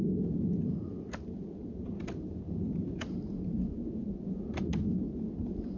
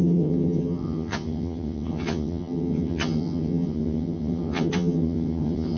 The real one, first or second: first